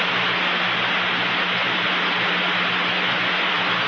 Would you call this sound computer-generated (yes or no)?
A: no